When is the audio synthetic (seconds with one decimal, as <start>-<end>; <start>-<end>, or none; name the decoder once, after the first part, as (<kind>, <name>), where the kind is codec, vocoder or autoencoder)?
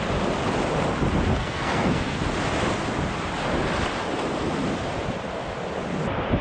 1.4-2.2 (codec, SNAC)